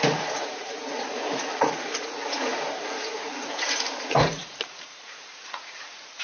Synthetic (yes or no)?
yes